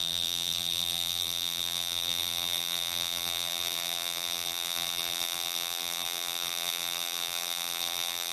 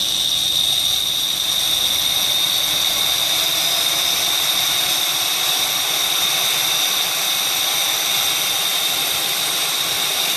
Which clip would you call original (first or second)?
second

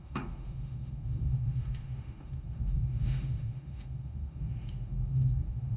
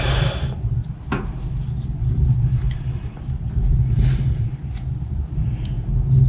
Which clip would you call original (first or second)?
second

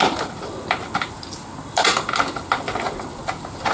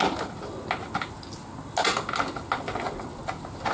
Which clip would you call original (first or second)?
second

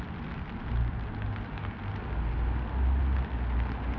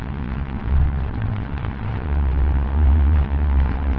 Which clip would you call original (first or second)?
first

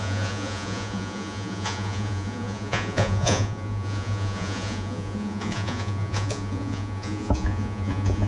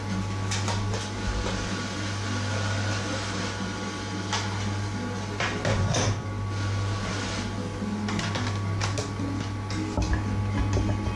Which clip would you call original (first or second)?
second